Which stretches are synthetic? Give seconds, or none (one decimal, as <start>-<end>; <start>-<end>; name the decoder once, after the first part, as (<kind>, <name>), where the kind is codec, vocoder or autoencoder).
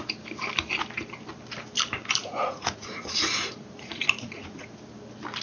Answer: 2.2-4.8 (vocoder, Vocos)